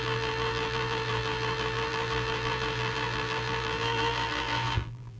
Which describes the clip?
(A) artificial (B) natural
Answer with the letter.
A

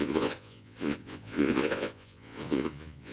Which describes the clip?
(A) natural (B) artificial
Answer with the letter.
B